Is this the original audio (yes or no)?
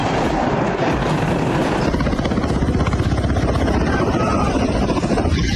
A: yes